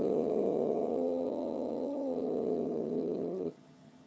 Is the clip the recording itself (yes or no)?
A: no